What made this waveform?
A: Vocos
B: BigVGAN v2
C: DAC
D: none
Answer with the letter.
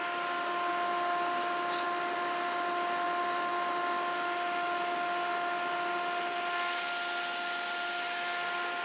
D